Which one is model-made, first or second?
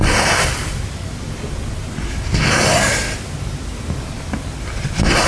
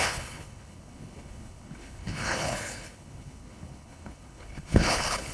second